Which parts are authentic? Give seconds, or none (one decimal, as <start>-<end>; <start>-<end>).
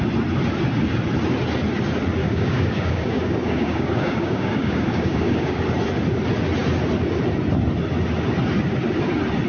0.0-2.2; 5.6-9.5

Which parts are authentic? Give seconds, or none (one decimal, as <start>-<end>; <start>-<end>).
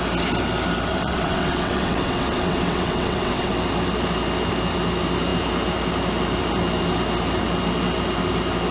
0.0-0.9; 3.5-8.7